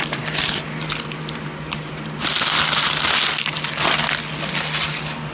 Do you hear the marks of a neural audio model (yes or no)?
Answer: no